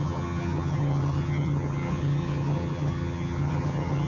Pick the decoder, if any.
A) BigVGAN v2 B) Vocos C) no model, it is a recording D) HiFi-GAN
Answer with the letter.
D